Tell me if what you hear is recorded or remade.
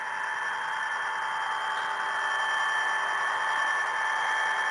recorded